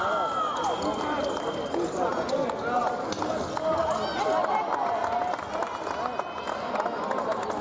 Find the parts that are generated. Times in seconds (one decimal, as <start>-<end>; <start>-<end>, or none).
none